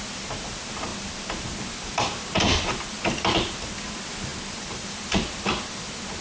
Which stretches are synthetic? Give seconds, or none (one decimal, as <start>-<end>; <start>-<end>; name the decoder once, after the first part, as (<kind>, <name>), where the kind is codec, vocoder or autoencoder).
0.0-6.2 (vocoder, BigVGAN v2)